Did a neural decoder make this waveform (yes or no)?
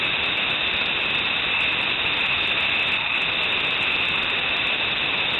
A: no